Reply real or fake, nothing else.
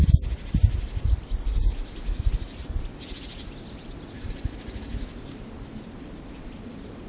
real